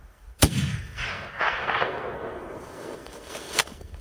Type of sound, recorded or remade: remade